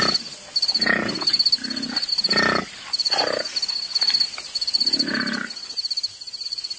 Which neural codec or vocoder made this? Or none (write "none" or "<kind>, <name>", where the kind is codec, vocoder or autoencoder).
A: none